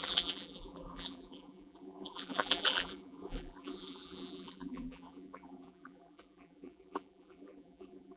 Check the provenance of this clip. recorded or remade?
remade